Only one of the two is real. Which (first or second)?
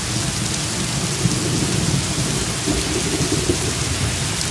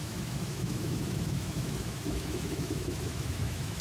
first